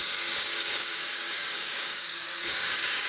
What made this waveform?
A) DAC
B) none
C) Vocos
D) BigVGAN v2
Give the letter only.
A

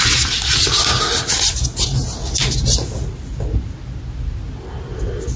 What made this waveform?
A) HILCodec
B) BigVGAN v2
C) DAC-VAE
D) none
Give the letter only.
D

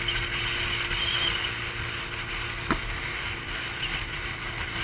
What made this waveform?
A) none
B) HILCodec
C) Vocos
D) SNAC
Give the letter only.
A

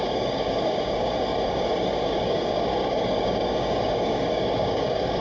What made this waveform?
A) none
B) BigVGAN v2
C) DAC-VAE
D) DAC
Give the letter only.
D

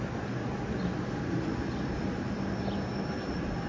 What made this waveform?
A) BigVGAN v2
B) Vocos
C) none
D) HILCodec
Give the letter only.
C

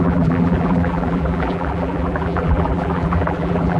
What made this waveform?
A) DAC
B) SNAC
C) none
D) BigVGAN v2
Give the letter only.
D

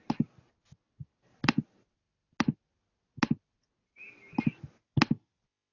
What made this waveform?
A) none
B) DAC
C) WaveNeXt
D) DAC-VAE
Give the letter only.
A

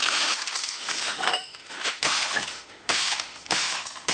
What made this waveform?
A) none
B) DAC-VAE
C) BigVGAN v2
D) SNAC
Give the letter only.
B